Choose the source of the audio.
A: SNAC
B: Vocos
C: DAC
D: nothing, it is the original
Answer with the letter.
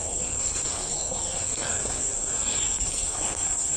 A